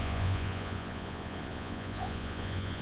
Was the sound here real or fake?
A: fake